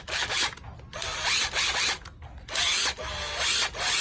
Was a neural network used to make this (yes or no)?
no